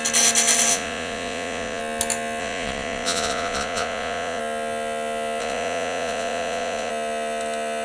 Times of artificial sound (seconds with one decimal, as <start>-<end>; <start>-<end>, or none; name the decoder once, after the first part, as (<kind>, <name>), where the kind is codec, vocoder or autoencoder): 0.7-1.8 (vocoder, Vocos); 2.4-4.4; 5.4-6.9